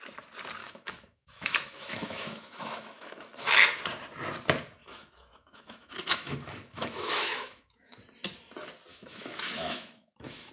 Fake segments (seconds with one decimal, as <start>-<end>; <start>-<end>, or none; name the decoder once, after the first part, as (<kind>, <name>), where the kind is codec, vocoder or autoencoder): 0.6-3.8 (autoencoder, DAC-VAE); 4.8-8.0; 8.9-10.5